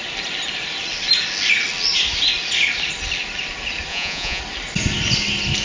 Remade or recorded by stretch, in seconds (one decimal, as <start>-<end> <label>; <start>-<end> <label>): 0.0-3.9 recorded; 3.9-4.4 remade; 4.4-5.6 recorded